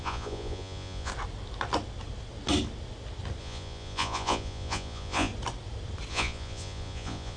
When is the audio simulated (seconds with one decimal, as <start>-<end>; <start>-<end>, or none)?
0.0-1.1; 3.4-5.3; 6.1-7.4